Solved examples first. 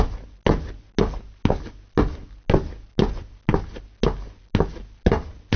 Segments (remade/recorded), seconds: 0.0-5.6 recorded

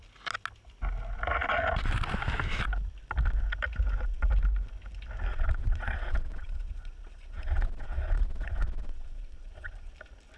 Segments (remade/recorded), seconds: 0.0-5.3 recorded; 5.3-9.9 remade; 9.9-10.4 recorded

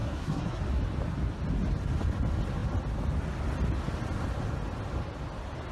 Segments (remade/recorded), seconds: 0.0-0.6 remade; 0.6-5.7 recorded

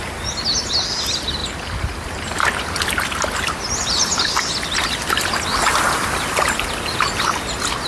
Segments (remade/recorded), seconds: 0.0-7.9 recorded